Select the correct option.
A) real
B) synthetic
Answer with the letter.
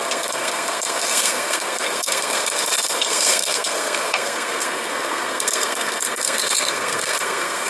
B